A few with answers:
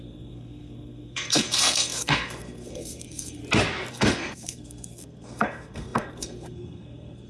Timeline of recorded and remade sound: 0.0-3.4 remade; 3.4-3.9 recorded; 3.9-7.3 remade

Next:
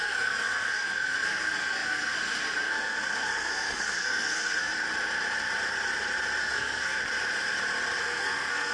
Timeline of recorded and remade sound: 0.0-4.7 remade; 4.7-6.4 recorded; 6.4-7.0 remade; 7.0-8.0 recorded; 8.0-8.7 remade

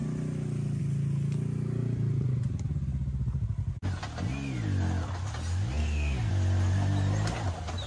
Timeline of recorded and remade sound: 0.0-5.8 recorded; 5.8-6.3 remade; 6.3-7.9 recorded

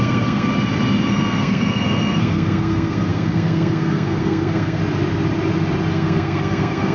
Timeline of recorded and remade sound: 0.0-0.5 remade; 0.5-1.1 recorded; 1.1-4.8 remade; 4.8-5.9 recorded; 5.9-6.9 remade

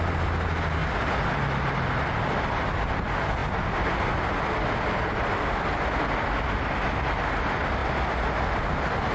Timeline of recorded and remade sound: 0.0-9.1 recorded

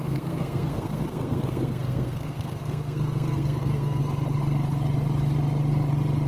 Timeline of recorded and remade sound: 0.0-4.0 remade; 4.0-6.3 recorded

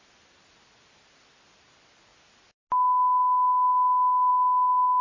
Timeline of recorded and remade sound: 0.0-5.0 recorded